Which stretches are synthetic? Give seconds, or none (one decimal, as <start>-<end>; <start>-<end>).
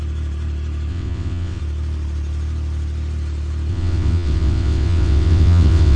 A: 0.9-1.6; 3.7-6.0